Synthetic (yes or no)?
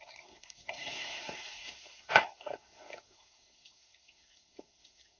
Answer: yes